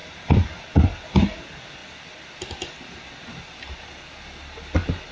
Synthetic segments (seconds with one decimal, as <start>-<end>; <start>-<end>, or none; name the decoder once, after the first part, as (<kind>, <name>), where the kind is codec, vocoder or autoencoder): 0.0-0.7 (vocoder, BigVGAN v2)